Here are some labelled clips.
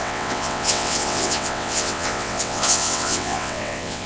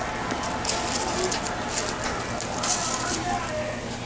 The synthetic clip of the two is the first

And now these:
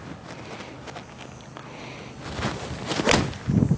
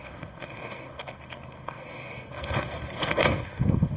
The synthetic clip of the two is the second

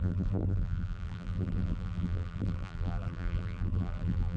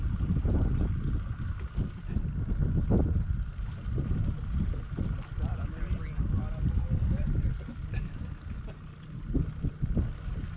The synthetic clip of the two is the first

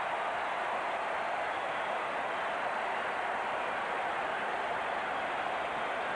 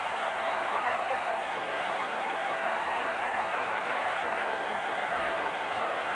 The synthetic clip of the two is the second